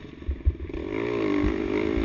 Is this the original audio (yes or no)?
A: yes